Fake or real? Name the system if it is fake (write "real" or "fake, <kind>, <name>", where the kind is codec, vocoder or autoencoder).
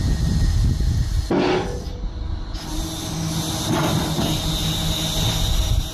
real